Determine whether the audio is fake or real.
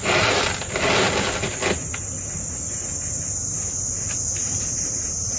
real